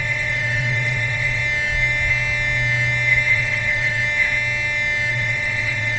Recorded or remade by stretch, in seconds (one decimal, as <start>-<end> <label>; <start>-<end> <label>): 0.0-1.4 remade; 1.4-3.3 recorded; 3.3-4.0 remade; 4.0-5.1 recorded; 5.1-6.0 remade